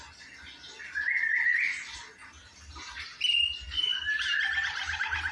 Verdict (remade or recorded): recorded